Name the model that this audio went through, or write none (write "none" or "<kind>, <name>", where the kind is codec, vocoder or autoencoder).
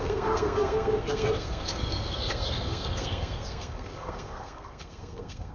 codec, SNAC